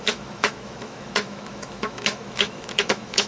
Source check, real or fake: fake